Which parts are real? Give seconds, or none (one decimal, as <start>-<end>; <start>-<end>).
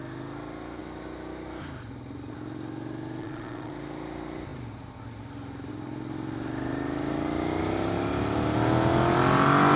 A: 0.0-3.2; 3.7-9.8